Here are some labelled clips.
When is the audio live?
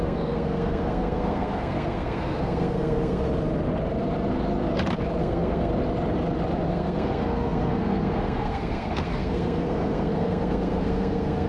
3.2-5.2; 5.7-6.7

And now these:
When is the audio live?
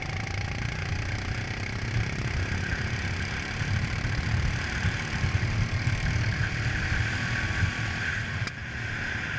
8.6-9.4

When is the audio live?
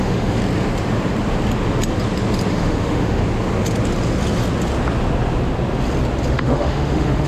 0.4-2.5; 3.2-6.3